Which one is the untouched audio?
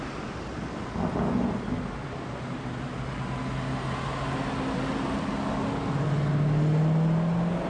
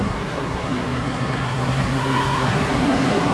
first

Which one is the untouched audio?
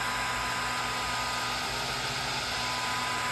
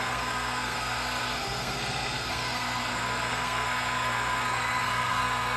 first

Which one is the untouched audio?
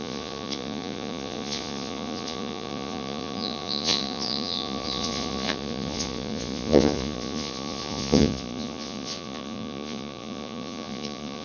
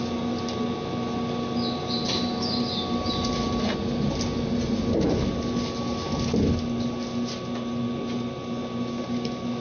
second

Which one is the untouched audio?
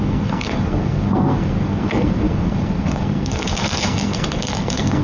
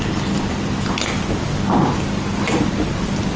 second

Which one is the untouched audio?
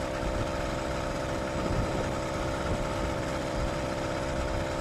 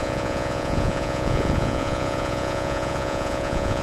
first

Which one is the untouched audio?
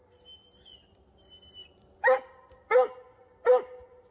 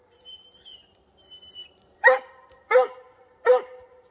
first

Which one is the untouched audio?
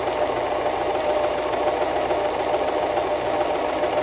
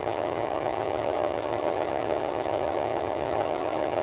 first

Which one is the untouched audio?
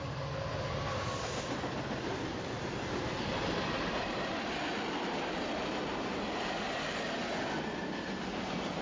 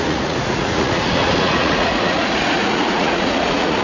first